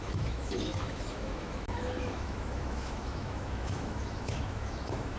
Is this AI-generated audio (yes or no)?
yes